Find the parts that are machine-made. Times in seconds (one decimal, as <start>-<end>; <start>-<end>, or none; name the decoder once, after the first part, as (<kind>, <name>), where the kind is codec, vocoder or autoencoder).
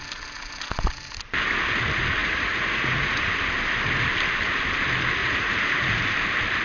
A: 2.2-3.2 (vocoder, Vocos); 5.2-6.0